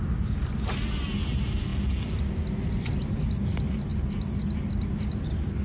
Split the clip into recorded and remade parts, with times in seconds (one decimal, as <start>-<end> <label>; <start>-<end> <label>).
0.0-5.6 recorded